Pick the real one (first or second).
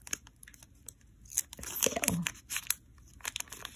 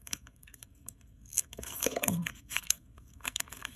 first